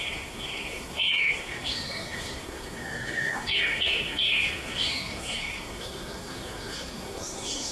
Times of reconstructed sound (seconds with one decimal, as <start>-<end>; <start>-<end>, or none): 0.0-7.7